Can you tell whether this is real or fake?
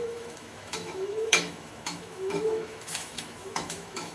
fake